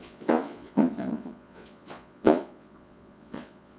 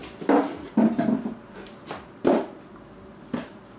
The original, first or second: second